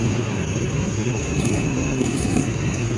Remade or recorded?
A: remade